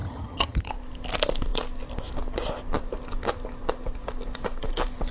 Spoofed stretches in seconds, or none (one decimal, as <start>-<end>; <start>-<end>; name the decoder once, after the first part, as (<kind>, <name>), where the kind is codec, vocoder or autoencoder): 0.0-0.7 (vocoder, HiFi-GAN)